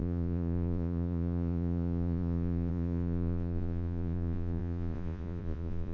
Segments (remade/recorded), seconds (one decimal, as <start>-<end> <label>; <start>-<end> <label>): 0.0-5.9 remade